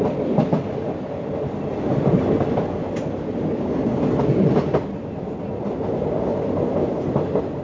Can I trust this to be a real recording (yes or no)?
yes